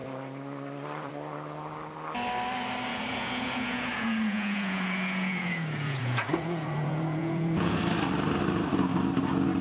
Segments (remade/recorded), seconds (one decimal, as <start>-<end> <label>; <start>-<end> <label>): 0.0-2.9 recorded; 2.9-7.8 remade; 7.8-9.6 recorded